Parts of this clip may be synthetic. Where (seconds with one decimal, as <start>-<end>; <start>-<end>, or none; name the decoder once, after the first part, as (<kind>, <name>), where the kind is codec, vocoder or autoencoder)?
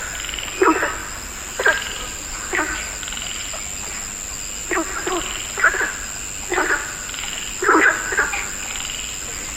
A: none